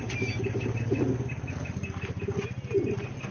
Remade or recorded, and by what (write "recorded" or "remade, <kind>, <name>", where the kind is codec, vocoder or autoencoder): recorded